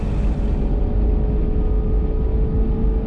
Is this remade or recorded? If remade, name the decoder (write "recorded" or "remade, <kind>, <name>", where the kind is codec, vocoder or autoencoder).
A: recorded